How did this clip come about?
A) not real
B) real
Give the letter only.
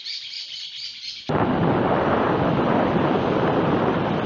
B